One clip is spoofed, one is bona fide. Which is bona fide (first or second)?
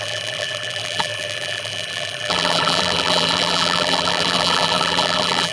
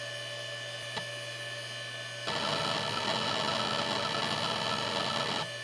second